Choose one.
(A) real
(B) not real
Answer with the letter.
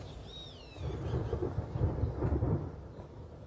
A